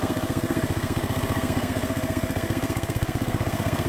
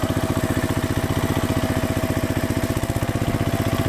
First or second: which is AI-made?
first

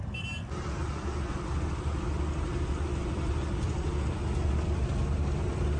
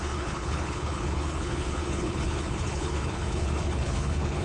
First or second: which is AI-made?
second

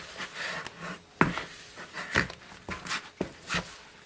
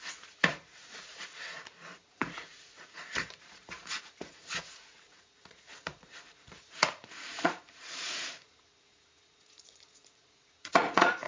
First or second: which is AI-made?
second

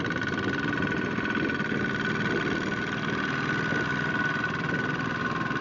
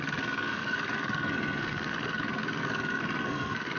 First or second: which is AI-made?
second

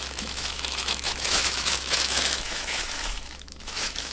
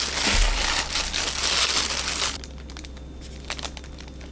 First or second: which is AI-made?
first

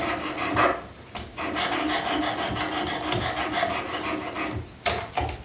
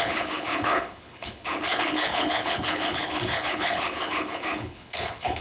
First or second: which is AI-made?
second